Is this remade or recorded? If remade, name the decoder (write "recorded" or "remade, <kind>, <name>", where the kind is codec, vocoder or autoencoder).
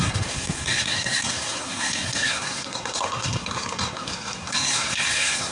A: remade, codec, SNAC